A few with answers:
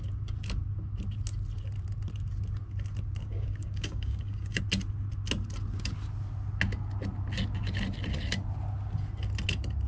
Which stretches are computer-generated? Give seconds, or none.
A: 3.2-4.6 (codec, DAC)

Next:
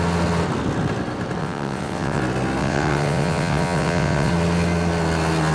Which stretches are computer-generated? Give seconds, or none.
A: 1.4-2.2 (vocoder, WaveNeXt); 2.6-4.3

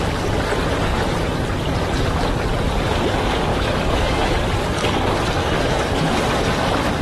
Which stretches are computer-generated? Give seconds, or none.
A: 3.5-4.4 (codec, DAC); 5.4-6.1

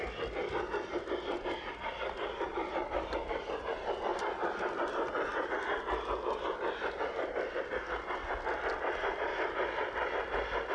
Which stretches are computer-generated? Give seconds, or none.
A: none

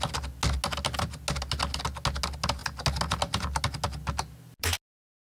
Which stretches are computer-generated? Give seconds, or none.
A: none

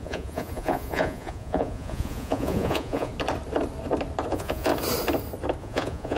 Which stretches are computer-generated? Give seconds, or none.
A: 0.0-3.1 (vocoder, Vocos); 4.3-4.7; 5.6-6.2

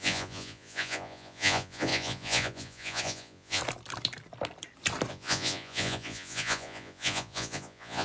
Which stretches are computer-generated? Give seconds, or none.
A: 0.0-3.6 (vocoder, Vocos); 5.1-8.0

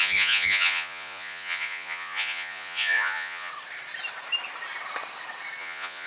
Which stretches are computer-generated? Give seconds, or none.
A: 0.0-3.5 (vocoder, Vocos); 5.6-6.1